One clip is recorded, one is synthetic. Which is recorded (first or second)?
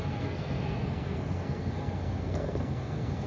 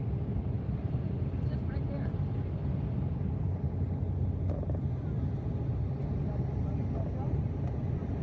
second